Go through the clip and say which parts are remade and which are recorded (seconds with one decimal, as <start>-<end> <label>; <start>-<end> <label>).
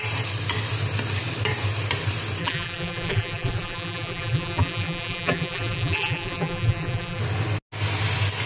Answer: 0.0-2.4 recorded; 2.4-7.2 remade; 7.2-8.5 recorded